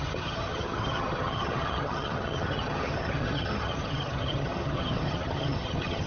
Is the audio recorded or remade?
remade